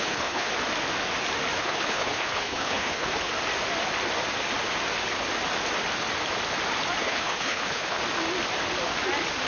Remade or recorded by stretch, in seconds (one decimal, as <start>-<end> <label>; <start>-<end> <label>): 0.0-0.5 remade; 0.5-1.6 recorded; 1.6-3.3 remade; 3.3-7.0 recorded; 7.0-8.0 remade; 8.0-9.5 recorded